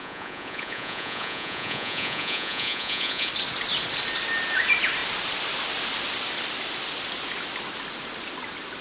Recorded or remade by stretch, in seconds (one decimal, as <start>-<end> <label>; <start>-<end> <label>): 0.0-3.3 remade; 3.3-8.8 recorded